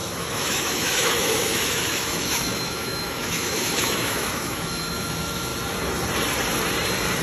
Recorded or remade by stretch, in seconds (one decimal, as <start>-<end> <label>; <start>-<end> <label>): 0.0-5.5 remade; 5.5-7.2 recorded